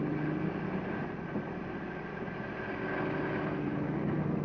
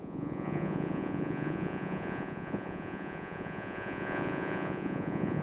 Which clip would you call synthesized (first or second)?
second